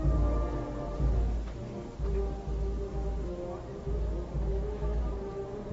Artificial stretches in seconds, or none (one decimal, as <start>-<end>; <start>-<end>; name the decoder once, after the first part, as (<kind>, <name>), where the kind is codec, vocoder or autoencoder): 4.5-5.0 (autoencoder, DAC-VAE)